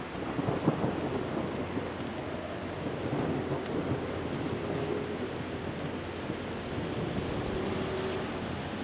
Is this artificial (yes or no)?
no